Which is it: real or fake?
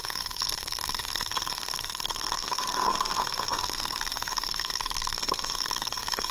fake